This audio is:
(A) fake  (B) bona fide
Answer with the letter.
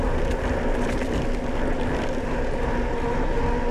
B